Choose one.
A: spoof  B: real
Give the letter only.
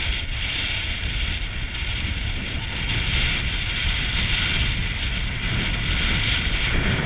B